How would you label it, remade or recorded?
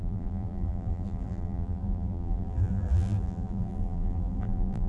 remade